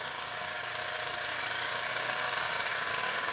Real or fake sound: fake